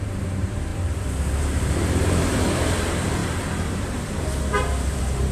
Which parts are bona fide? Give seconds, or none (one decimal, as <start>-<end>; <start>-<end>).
3.2-3.7